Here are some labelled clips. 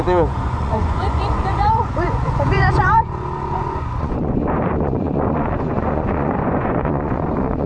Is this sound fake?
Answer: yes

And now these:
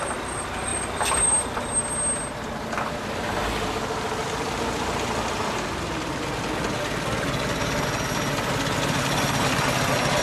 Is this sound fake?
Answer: no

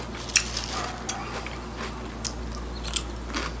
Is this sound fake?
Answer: no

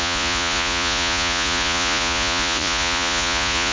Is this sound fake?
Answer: yes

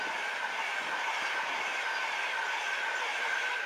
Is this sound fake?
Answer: no